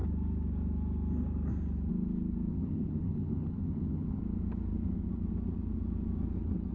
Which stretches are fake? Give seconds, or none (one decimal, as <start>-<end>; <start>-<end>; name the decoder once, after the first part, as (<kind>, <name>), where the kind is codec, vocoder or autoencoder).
2.5-4.2 (vocoder, HiFi-GAN)